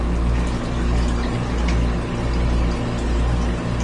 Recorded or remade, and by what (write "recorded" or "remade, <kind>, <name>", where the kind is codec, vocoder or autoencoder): recorded